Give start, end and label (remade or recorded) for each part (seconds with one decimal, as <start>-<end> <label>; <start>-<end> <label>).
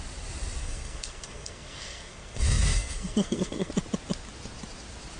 0.0-0.6 recorded; 0.6-3.7 remade; 3.7-5.2 recorded